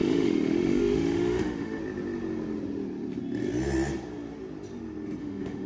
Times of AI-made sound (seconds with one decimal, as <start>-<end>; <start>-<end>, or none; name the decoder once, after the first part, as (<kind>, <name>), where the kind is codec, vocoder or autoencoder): 0.0-1.8 (autoencoder, DAC-VAE); 5.2-5.7